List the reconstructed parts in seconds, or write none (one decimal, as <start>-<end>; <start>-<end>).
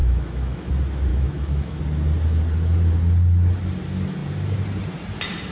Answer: 0.0-0.7; 1.1-1.8